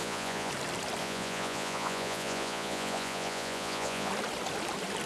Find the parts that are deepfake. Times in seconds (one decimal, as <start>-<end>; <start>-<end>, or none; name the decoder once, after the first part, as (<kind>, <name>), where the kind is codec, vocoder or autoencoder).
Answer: 0.0-0.5 (vocoder, Vocos); 1.0-4.1